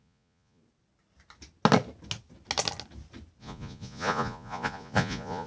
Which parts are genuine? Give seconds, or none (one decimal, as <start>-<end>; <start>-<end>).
0.6-3.4